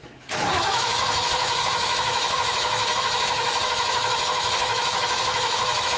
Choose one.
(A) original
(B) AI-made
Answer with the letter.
B